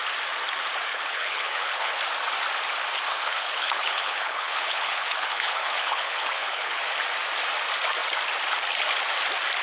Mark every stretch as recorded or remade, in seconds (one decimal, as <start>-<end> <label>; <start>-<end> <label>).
0.0-0.9 recorded; 0.9-1.9 remade; 1.9-3.1 recorded; 3.1-6.8 remade; 6.8-9.6 recorded